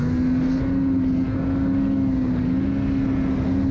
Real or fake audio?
real